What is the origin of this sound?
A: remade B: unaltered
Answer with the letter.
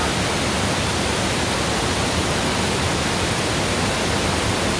B